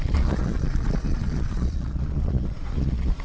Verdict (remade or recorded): remade